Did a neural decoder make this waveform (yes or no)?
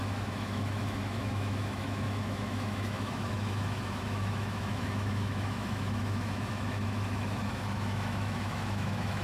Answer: yes